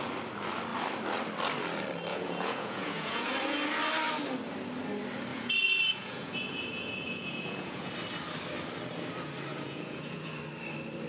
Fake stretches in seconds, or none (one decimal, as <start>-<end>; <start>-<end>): 2.1-3.3; 5.3-7.9; 9.5-10.4

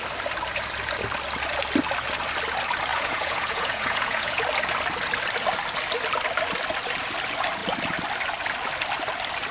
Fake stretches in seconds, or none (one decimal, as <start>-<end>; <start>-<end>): 2.9-4.4

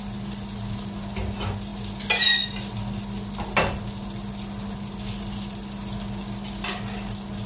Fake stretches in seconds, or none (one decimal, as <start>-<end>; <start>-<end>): none

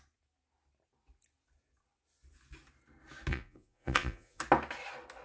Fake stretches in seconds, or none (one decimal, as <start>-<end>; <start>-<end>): 3.3-4.4

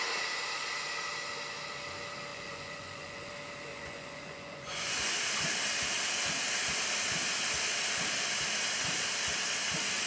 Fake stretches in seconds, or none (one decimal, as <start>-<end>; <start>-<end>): 2.3-3.3; 3.7-5.2

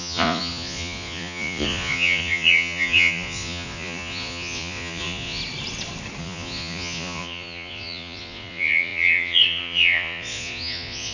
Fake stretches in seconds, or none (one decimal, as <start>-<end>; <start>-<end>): 0.0-5.4; 6.2-11.1

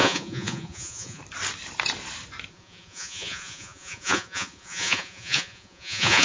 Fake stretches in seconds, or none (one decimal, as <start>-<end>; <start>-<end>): 0.0-1.2; 2.5-6.2